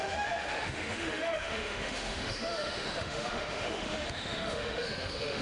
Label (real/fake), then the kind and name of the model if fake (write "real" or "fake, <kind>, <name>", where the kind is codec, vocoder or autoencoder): fake, autoencoder, DAC-VAE